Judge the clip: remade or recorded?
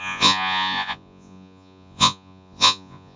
remade